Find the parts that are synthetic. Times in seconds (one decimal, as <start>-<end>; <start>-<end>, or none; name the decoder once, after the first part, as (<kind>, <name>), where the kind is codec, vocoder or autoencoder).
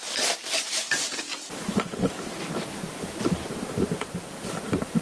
none